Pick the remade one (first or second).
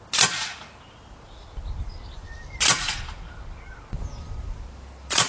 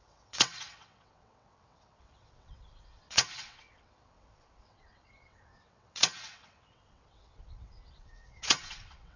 second